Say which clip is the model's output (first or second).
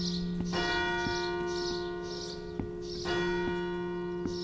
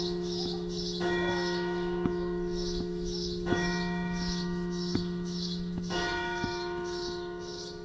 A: second